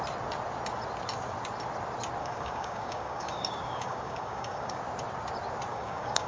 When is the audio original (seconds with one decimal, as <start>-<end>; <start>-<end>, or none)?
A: 0.0-2.2; 4.8-5.7